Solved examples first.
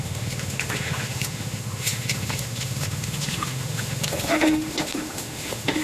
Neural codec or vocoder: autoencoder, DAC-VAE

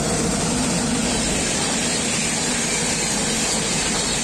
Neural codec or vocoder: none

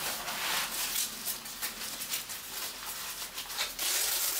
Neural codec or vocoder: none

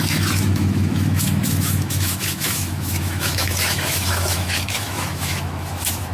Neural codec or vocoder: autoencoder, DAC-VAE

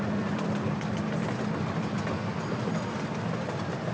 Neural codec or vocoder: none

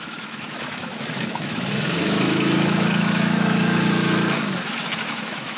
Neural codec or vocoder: autoencoder, DAC-VAE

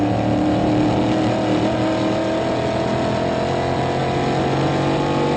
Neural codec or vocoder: none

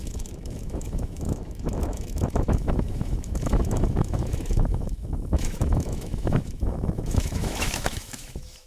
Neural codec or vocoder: autoencoder, DAC-VAE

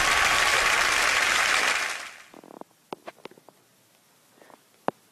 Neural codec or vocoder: none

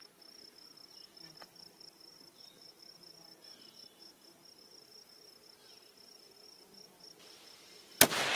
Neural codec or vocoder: none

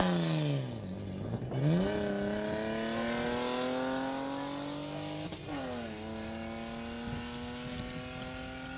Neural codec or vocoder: none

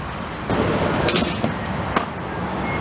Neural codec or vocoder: none